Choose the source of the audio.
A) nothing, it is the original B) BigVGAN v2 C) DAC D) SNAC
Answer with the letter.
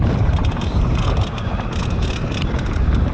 B